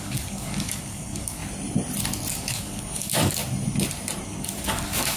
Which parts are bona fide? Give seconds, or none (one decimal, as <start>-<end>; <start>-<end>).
1.4-2.3; 3.4-4.4